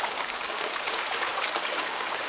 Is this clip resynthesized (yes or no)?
yes